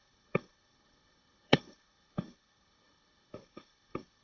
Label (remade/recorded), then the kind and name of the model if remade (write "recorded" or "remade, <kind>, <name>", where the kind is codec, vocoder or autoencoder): remade, codec, HILCodec